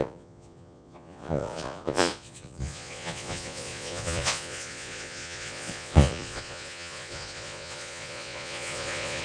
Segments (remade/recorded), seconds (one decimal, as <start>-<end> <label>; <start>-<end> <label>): 0.0-9.2 remade